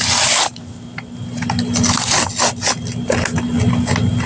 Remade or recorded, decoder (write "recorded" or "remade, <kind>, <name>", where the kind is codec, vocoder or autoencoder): recorded